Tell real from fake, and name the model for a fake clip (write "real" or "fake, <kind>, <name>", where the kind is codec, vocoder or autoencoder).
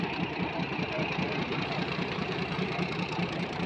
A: fake, vocoder, BigVGAN v2